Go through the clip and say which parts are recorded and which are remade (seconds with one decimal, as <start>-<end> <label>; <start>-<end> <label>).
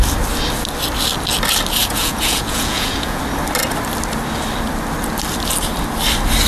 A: 0.0-1.8 recorded; 1.8-3.2 remade; 3.2-6.5 recorded